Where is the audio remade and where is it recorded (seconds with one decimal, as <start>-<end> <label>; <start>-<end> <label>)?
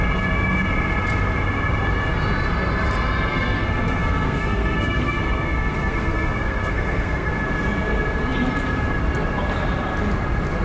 0.0-3.3 recorded; 3.3-7.3 remade; 7.3-10.6 recorded